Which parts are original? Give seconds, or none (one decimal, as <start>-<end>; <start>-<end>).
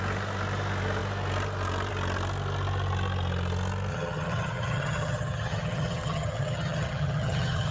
0.0-3.9